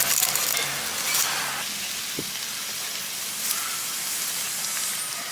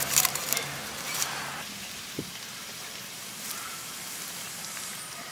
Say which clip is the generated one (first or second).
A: second